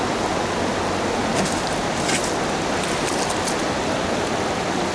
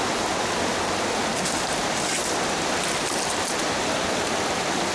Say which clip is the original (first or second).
first